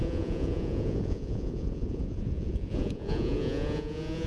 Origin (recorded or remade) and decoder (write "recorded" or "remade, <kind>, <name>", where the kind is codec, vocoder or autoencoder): remade, vocoder, Vocos